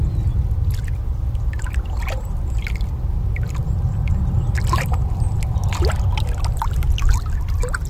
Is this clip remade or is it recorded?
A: recorded